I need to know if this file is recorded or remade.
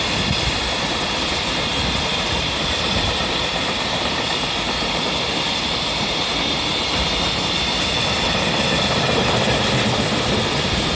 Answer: remade